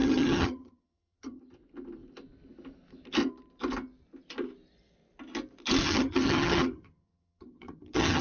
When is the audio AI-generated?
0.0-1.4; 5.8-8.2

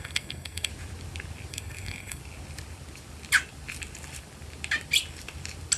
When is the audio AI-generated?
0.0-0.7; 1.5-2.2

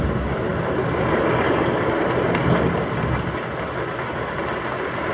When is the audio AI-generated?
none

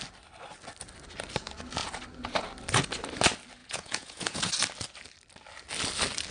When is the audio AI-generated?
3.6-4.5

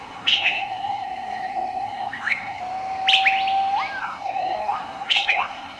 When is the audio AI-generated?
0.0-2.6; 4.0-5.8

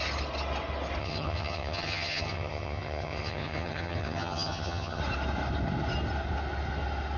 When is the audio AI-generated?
1.0-5.0